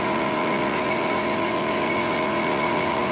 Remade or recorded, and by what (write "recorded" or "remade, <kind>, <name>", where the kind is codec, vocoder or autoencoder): remade, vocoder, Vocos